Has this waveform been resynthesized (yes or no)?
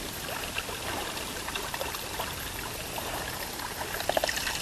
no